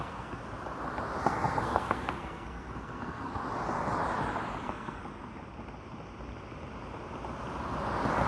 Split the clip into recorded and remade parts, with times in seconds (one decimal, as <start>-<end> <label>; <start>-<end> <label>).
0.0-0.4 remade; 0.4-1.2 recorded; 1.2-3.4 remade; 3.4-4.6 recorded; 4.6-5.0 remade; 5.0-8.3 recorded